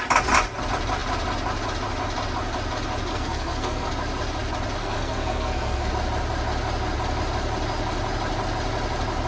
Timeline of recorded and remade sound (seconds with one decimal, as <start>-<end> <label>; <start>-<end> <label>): 0.0-3.1 recorded; 3.1-3.9 remade; 3.9-4.8 recorded; 4.8-5.9 remade; 5.9-9.3 recorded